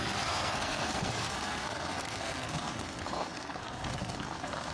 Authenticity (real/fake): fake